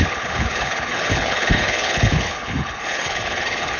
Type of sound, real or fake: fake